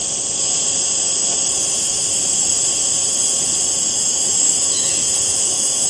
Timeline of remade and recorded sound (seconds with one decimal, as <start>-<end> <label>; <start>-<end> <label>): 0.0-1.5 recorded; 1.5-2.5 remade; 2.5-3.8 recorded; 3.8-5.9 remade